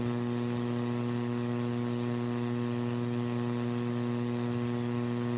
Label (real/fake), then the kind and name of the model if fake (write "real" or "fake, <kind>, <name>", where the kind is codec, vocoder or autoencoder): real